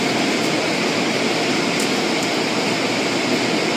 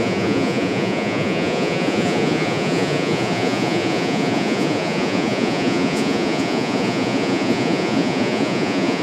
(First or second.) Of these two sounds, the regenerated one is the second